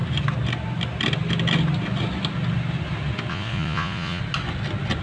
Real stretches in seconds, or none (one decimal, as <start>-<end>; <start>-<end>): 0.0-3.3; 4.2-5.0

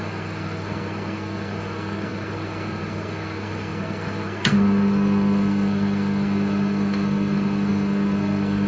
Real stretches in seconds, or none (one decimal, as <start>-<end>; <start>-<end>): none

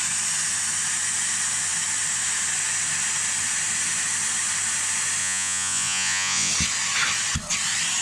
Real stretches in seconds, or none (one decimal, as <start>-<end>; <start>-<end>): 0.0-5.2; 6.5-8.0

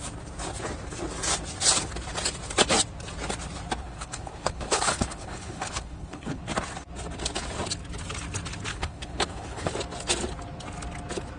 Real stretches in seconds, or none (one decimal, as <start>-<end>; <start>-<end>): 0.0-3.8; 6.4-8.7; 9.7-11.4

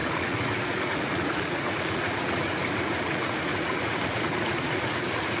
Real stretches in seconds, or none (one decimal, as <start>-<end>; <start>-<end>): none

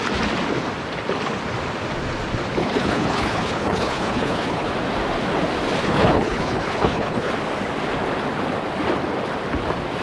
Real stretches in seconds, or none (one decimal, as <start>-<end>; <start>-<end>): 0.0-2.6; 4.7-5.8; 7.3-10.0

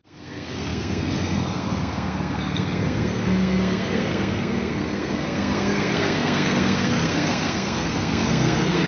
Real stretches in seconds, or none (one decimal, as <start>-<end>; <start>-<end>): none